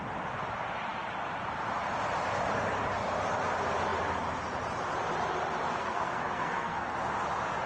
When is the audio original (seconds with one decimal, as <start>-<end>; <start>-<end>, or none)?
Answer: 0.0-5.7; 6.9-7.7